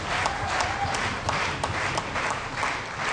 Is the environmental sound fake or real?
real